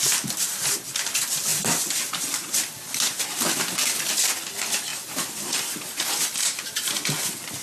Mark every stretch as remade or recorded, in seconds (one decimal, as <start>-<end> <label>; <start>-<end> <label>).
0.0-1.5 recorded; 1.5-3.2 remade; 3.2-4.9 recorded; 4.9-6.0 remade; 6.0-7.6 recorded